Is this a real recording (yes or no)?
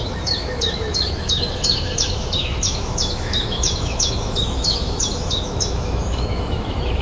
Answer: no